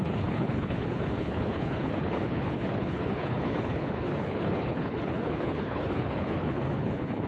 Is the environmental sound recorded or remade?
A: remade